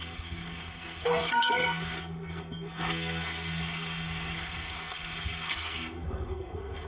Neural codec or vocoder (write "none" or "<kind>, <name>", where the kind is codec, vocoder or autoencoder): codec, SNAC